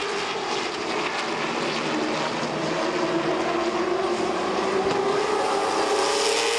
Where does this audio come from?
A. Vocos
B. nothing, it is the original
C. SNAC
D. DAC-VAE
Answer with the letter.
B